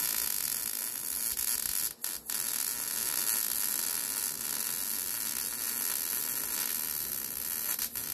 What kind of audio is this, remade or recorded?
recorded